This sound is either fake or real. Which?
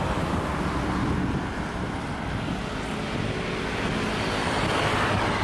real